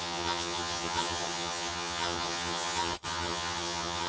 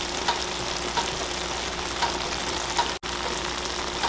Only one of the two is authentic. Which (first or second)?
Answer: second